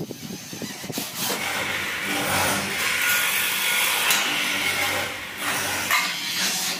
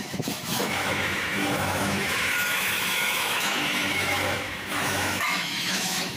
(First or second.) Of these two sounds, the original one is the first